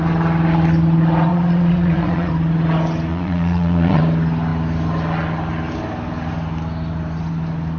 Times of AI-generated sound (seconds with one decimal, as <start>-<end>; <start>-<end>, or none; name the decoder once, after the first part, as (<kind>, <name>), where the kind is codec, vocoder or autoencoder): 1.3-2.3 (vocoder, Vocos); 3.1-4.0